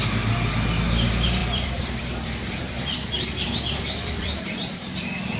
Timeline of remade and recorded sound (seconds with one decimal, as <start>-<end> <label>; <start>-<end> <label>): 0.0-1.4 recorded; 1.4-4.6 remade; 4.6-5.4 recorded